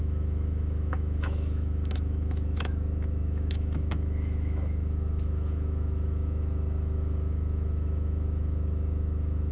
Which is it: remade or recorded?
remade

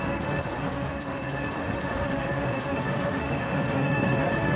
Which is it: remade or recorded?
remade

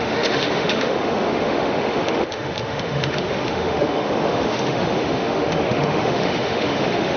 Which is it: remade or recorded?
remade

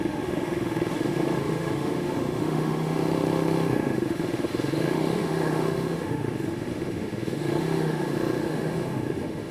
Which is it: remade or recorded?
remade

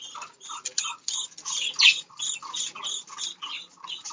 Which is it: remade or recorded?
recorded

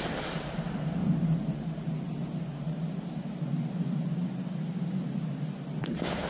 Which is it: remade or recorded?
recorded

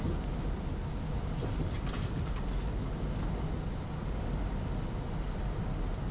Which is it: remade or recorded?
recorded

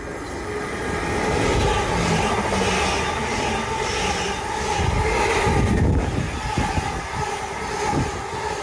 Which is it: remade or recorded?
recorded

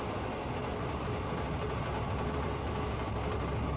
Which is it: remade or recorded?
recorded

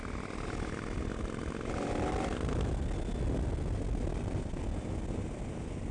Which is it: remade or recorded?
recorded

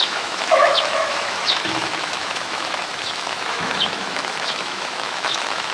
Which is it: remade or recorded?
remade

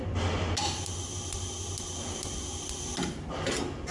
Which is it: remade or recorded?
recorded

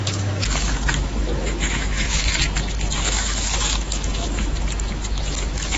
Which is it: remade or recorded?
remade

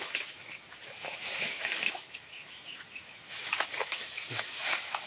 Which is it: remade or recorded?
remade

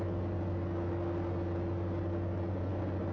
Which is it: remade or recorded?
recorded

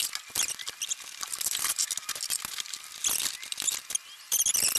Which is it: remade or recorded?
recorded